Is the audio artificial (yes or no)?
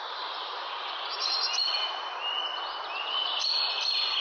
no